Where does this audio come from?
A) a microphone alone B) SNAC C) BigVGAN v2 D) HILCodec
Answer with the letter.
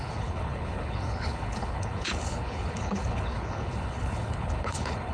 D